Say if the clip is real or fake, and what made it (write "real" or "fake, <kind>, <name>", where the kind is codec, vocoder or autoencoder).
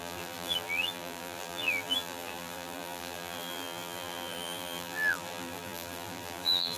fake, vocoder, BigVGAN v2